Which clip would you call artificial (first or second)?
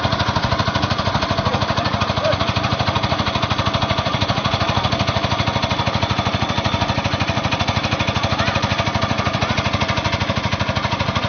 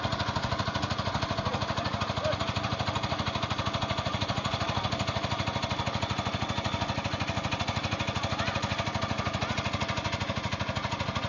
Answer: first